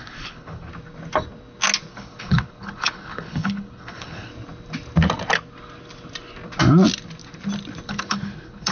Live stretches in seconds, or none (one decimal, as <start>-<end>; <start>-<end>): 0.7-1.9; 4.3-7.9